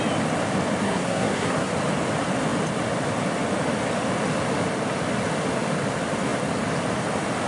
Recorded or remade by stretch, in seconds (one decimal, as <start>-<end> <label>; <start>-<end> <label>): 0.0-0.8 recorded; 0.8-1.7 remade; 1.7-7.5 recorded